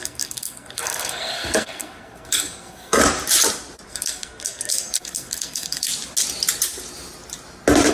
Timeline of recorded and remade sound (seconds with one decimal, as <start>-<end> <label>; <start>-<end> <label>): 0.0-3.0 remade; 3.0-3.9 recorded; 3.9-5.9 remade; 5.9-7.9 recorded